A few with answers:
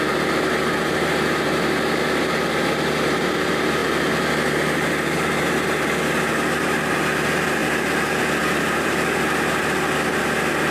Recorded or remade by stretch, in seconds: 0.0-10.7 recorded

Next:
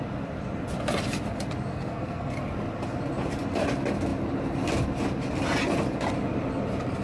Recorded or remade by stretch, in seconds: 0.0-1.7 recorded; 1.7-2.3 remade; 2.3-7.0 recorded

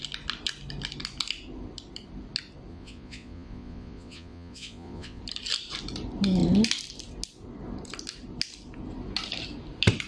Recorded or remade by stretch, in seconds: 0.0-2.7 recorded; 2.7-5.2 remade; 5.2-10.1 recorded

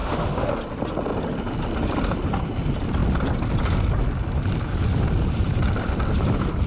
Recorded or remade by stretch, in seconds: 0.0-0.5 remade; 0.5-6.7 recorded